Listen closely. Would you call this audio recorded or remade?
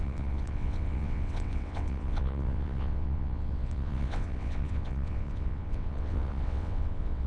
remade